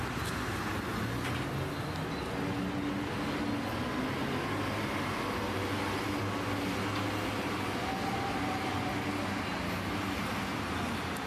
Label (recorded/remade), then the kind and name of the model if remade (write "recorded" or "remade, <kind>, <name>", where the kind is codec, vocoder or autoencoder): recorded